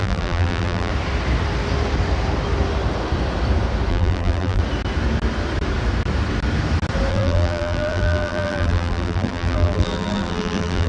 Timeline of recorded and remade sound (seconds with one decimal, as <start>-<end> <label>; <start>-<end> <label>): 0.0-0.9 remade; 0.9-3.9 recorded; 3.9-4.6 remade; 4.6-7.1 recorded; 7.1-10.9 remade